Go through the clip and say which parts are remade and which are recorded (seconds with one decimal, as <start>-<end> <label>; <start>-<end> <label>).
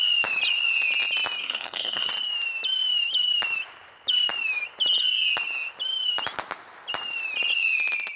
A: 0.0-1.4 recorded; 1.4-2.1 remade; 2.1-8.2 recorded